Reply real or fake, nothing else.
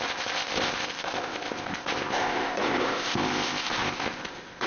fake